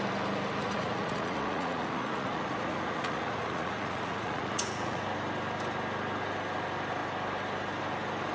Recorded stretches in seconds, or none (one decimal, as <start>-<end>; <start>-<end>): 0.0-0.6; 5.0-8.3